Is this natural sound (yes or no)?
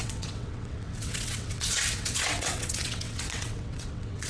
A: no